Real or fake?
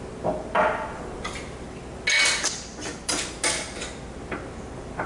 real